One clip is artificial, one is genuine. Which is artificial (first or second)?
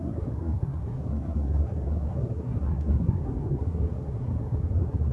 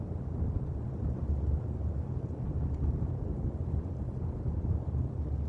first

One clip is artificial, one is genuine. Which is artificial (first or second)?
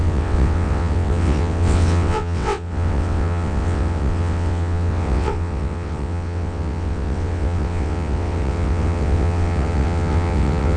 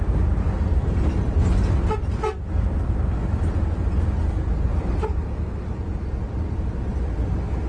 first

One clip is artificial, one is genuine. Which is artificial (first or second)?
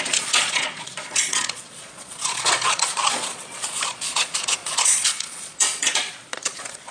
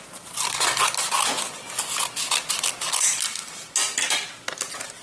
first